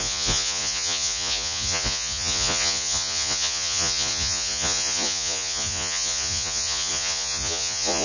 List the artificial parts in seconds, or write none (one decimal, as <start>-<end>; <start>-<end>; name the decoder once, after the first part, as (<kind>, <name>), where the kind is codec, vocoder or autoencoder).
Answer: 0.0-8.0 (vocoder, Vocos)